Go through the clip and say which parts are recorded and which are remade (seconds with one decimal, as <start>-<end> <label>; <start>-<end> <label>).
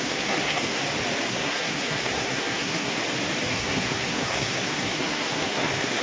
0.0-0.8 remade; 0.8-1.3 recorded; 1.3-3.0 remade; 3.0-3.5 recorded; 3.5-6.0 remade